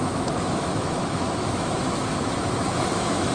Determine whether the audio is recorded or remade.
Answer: remade